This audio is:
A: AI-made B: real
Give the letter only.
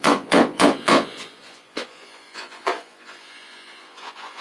A